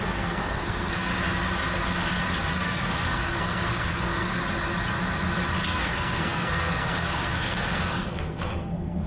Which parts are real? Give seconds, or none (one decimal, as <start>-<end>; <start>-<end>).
1.1-2.5; 4.4-5.6